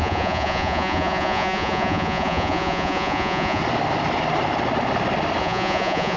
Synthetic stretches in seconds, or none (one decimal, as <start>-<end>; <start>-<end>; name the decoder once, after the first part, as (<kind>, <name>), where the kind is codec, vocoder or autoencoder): 0.0-3.6 (vocoder, Vocos); 5.4-6.2